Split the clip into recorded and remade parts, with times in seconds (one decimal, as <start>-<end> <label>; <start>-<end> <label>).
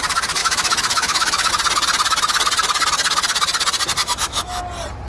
0.0-0.4 recorded; 0.4-1.5 remade; 1.5-4.0 recorded; 4.0-4.6 remade; 4.6-5.1 recorded